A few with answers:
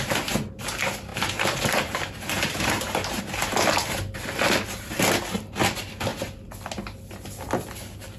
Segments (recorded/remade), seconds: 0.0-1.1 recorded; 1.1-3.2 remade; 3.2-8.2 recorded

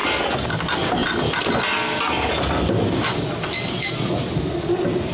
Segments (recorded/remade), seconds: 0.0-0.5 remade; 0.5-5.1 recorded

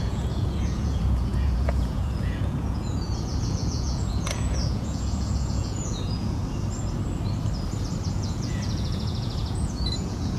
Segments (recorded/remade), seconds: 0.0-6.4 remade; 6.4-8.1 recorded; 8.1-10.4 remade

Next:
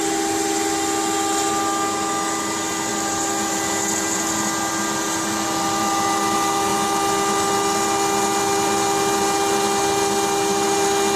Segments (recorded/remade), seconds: 0.0-11.2 recorded